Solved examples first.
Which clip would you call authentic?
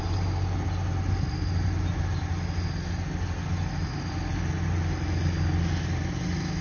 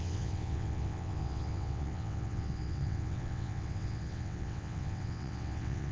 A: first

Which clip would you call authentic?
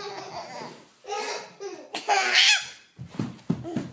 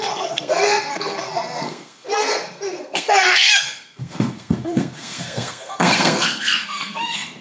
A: first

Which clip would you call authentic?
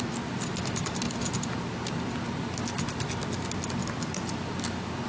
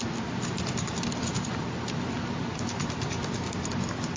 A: first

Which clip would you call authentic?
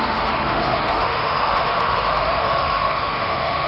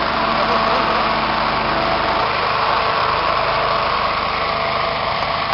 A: second